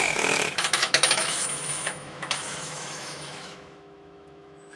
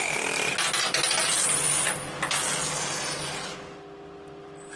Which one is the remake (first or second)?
first